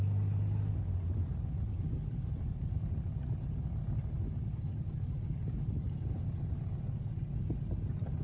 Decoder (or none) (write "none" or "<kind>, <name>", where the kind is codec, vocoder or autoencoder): none